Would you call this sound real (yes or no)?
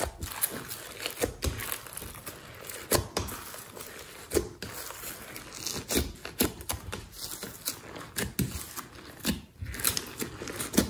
yes